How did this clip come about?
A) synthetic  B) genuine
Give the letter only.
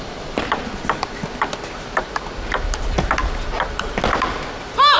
B